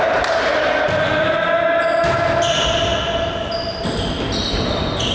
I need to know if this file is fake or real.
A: real